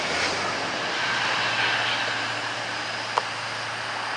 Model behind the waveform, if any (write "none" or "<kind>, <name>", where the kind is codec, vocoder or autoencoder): none